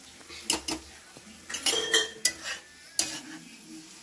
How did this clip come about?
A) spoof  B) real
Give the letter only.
B